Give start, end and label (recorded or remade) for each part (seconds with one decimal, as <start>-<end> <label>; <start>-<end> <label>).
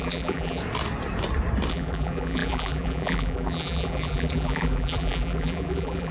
0.0-0.6 remade; 0.6-1.7 recorded; 1.7-6.1 remade